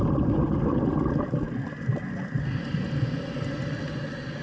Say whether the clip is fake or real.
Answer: real